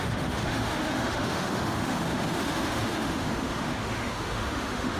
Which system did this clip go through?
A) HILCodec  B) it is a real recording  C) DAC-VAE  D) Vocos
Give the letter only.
C